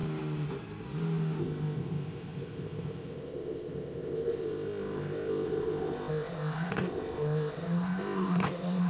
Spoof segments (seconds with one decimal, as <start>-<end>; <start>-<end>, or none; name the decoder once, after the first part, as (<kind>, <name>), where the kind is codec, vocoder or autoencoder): 1.4-8.9 (codec, ZipCodec)